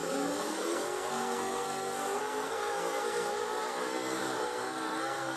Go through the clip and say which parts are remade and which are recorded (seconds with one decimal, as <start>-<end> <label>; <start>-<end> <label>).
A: 0.0-5.4 remade